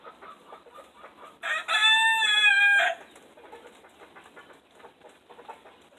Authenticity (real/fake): real